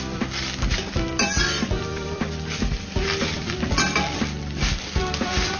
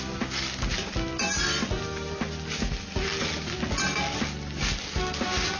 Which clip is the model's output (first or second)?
first